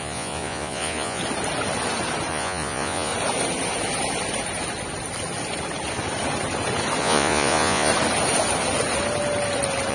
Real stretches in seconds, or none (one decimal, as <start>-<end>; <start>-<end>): 1.2-2.3; 3.1-7.0; 7.9-9.9